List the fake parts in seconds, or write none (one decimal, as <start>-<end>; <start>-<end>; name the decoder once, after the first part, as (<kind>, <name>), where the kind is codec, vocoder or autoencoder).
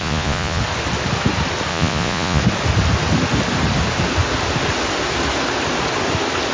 0.0-0.6 (vocoder, Vocos); 1.7-2.4